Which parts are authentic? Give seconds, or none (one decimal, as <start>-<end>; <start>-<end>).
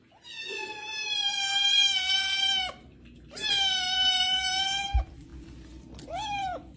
0.0-0.9; 3.5-6.8